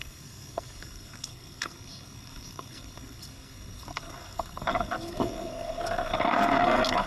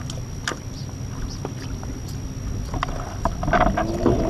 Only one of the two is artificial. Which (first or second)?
first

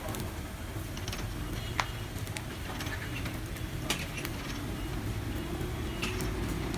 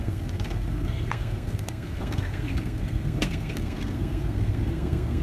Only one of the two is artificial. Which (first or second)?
second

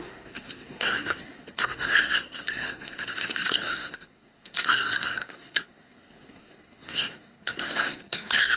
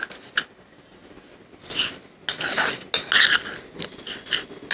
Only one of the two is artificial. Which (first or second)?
first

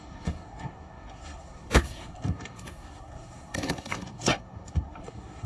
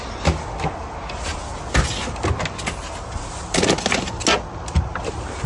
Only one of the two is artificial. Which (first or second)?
first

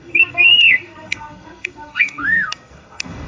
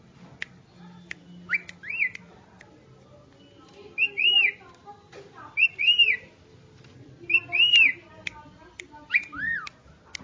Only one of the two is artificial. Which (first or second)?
first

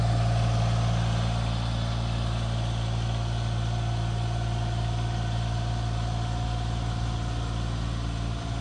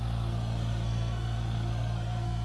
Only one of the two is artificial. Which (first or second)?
second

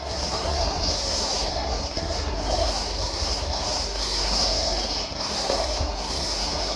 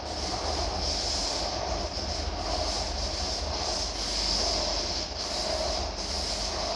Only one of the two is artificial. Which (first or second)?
first